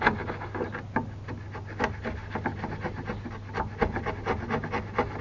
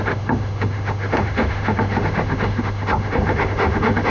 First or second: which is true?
first